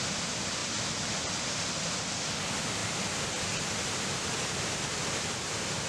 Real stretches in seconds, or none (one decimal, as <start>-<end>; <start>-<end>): 0.0-5.9